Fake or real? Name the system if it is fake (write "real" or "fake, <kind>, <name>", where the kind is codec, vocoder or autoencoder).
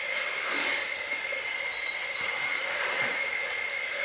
real